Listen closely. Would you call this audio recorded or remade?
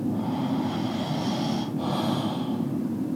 remade